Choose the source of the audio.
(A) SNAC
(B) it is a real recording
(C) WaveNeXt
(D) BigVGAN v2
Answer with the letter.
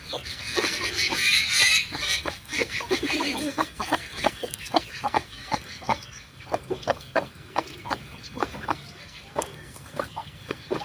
A